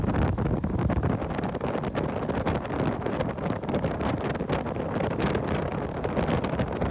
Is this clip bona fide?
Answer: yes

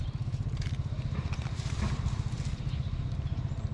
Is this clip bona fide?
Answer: no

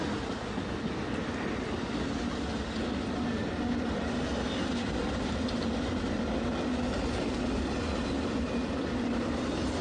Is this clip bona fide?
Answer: yes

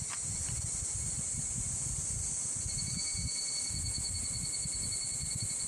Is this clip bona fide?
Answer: yes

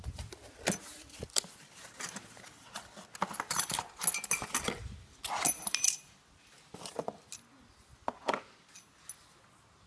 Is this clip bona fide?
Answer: yes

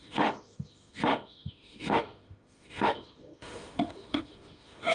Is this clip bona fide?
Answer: no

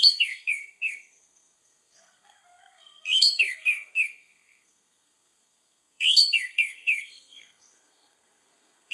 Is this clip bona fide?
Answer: no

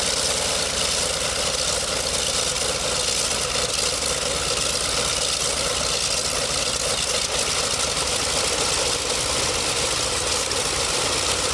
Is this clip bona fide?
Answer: yes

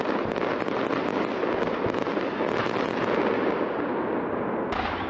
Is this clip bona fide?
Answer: yes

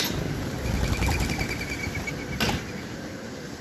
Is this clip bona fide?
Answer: yes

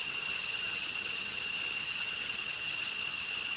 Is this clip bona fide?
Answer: no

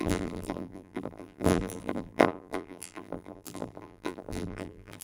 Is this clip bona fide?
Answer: no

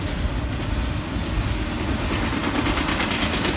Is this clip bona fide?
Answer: yes